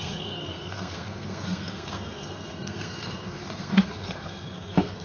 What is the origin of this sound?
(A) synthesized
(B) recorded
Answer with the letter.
A